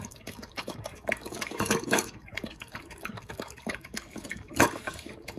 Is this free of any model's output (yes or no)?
no